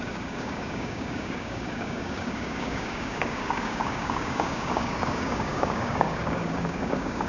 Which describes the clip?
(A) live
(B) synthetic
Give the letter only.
B